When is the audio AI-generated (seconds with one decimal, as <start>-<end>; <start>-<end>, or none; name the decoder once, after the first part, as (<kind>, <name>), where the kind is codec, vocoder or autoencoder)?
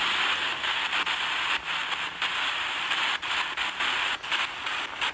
1.8-3.3 (vocoder, BigVGAN v2)